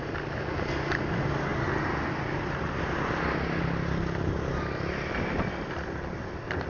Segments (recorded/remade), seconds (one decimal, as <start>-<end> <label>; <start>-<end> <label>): 0.0-6.7 recorded